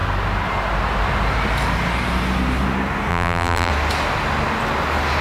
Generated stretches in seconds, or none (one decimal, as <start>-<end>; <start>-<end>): 3.1-3.7